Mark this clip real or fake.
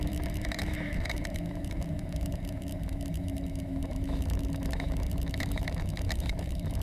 fake